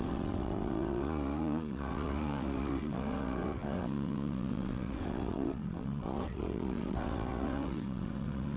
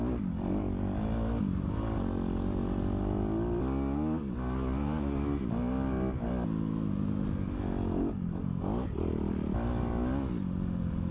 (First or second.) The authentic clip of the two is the second